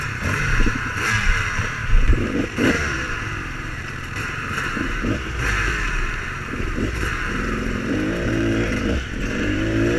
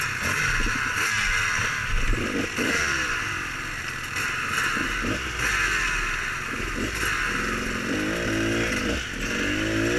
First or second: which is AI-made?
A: first